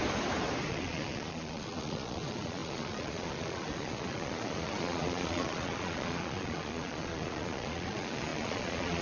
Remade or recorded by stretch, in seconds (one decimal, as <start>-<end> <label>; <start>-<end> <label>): 0.0-0.7 recorded; 0.7-9.0 remade